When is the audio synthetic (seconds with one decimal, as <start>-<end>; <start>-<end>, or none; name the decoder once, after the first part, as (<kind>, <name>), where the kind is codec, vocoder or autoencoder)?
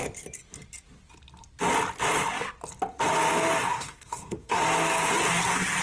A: 3.7-4.6 (codec, SNAC)